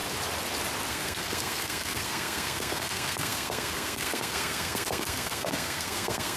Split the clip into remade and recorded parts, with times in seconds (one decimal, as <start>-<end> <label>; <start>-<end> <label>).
0.0-0.9 recorded; 0.9-6.4 remade